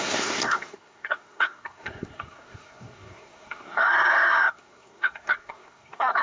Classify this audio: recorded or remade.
remade